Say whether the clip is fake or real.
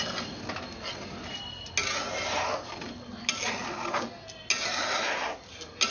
real